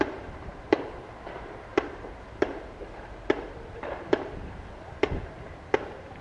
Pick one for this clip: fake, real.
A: fake